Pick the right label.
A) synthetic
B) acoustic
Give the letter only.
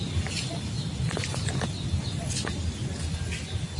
B